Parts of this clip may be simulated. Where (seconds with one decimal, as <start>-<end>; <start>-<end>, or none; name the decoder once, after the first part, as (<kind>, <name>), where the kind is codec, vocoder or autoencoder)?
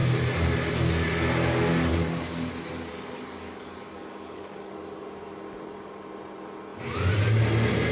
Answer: 1.9-2.5 (codec, DAC); 2.9-4.7